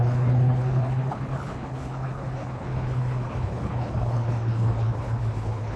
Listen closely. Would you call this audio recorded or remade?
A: remade